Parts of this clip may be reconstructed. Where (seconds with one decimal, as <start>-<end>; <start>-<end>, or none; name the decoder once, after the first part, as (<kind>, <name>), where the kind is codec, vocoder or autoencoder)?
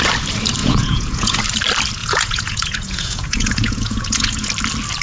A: 0.6-1.4 (vocoder, Vocos); 2.0-4.5